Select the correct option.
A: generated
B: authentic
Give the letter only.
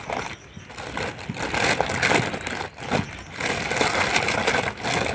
B